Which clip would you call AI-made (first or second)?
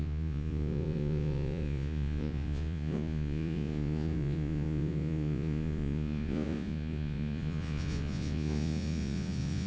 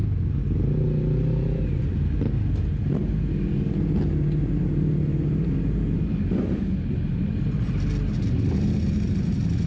first